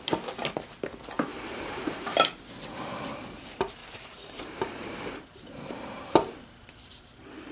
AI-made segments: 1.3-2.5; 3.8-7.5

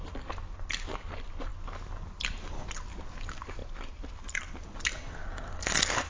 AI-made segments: 3.6-4.5

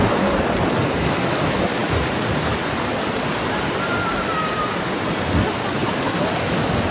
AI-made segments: none

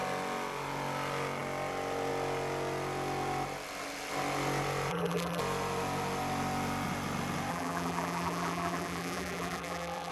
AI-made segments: 4.9-5.4; 7.5-10.1

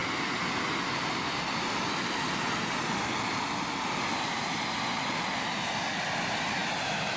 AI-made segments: 6.6-7.2